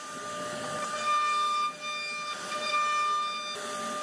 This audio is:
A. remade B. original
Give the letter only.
B